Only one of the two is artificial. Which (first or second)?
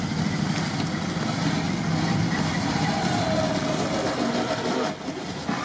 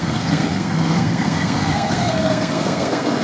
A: second